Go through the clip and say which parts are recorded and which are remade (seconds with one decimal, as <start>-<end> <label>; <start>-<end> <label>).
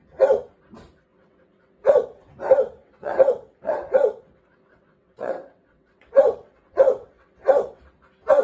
0.0-1.1 recorded; 1.1-2.3 remade; 2.3-2.8 recorded; 2.8-7.8 remade; 7.8-8.4 recorded